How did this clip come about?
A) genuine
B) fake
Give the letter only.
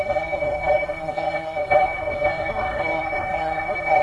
B